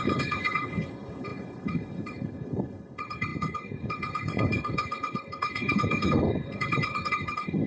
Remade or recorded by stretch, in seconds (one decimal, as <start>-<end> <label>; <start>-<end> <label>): 0.0-7.7 remade